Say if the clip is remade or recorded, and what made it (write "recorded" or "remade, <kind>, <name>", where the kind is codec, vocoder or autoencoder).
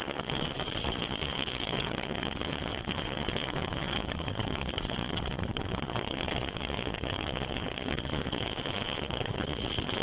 remade, vocoder, WaveNeXt